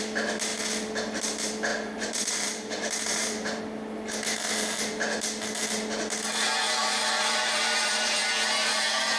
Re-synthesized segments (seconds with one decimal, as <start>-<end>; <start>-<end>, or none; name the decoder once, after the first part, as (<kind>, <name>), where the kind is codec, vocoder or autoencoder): 1.7-3.6 (vocoder, BigVGAN v2); 6.8-8.3